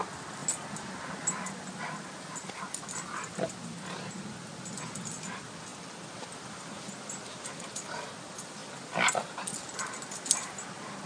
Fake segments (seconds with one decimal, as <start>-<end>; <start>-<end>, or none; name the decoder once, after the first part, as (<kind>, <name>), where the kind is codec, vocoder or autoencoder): 5.7-8.1 (vocoder, BigVGAN v2)